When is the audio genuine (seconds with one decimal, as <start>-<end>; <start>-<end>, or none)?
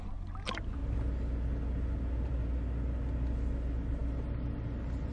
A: 0.0-5.1